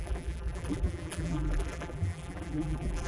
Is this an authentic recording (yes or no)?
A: no